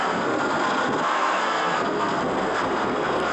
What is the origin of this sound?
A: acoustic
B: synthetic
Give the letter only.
B